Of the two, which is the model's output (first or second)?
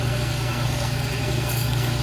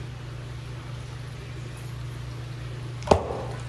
first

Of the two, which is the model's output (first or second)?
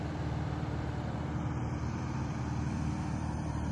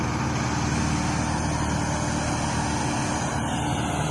first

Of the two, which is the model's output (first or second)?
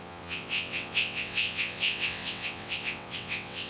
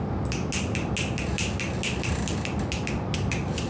first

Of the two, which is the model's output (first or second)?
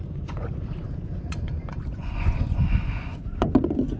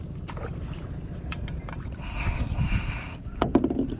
first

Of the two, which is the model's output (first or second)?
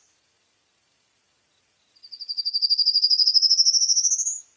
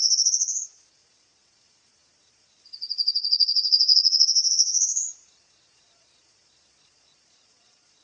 second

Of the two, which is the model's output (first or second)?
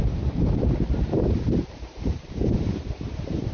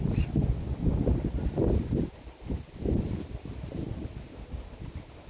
first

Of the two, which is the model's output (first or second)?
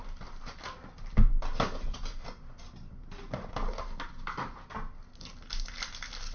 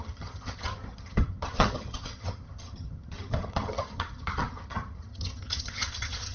second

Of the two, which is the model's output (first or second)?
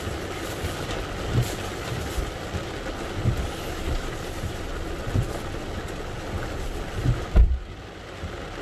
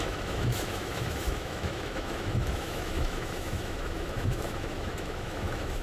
second